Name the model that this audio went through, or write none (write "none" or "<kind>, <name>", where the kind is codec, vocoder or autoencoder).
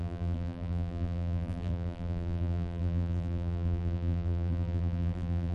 vocoder, BigVGAN v2